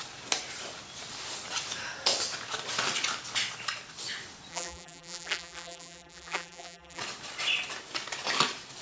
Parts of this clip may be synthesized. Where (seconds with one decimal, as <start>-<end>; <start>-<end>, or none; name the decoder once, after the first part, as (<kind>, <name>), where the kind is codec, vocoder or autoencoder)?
4.5-7.0 (vocoder, BigVGAN v2)

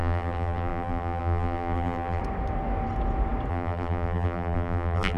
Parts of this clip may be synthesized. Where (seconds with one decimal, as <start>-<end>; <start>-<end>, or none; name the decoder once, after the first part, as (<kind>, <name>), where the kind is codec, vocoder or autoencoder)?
0.0-2.2 (vocoder, BigVGAN v2); 3.5-5.2

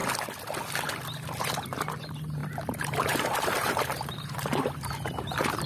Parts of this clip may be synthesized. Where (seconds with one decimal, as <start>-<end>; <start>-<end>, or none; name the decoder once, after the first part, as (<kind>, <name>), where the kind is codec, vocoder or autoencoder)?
2.0-5.7 (vocoder, BigVGAN v2)